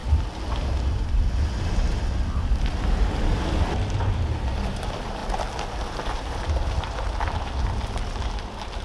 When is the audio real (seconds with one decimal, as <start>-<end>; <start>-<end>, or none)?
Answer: 0.0-8.8

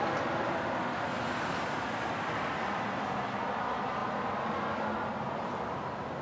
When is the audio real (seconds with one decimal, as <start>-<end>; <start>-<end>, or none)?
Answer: 0.0-6.2

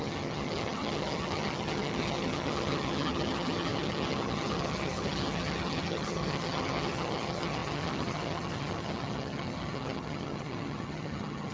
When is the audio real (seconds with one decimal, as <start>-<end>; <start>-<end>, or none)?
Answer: none